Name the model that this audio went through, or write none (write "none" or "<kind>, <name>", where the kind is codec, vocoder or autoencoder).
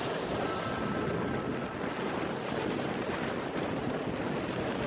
none